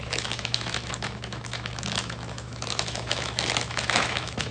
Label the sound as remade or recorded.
remade